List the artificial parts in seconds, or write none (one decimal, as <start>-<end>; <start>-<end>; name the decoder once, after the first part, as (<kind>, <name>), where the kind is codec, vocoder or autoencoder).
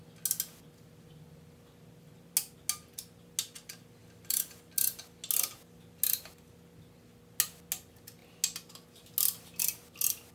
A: none